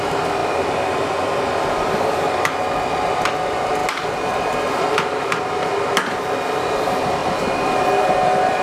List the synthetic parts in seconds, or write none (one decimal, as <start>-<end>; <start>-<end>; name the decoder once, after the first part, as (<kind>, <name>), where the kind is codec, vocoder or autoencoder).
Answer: 0.4-2.1 (vocoder, BigVGAN v2); 3.8-4.9; 7.2-8.6